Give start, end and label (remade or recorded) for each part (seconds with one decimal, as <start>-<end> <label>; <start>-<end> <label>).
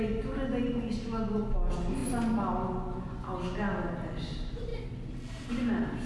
0.0-6.1 recorded